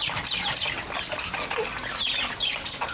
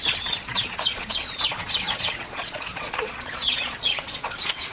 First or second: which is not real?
second